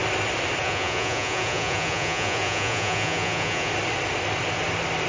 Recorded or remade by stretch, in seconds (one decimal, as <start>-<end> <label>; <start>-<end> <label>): 0.0-0.6 recorded; 0.6-3.7 remade; 3.7-5.1 recorded